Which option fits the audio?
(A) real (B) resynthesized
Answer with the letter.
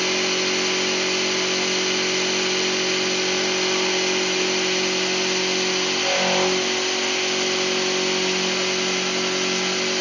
A